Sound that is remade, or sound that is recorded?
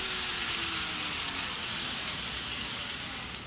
recorded